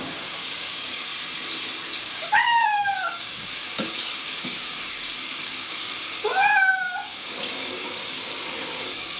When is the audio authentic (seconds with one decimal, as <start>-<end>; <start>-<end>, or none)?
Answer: 1.1-2.0